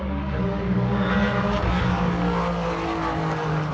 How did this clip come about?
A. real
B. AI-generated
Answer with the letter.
B